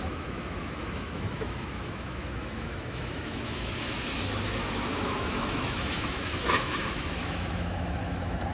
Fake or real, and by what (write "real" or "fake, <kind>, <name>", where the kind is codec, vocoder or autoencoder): fake, autoencoder, DAC-VAE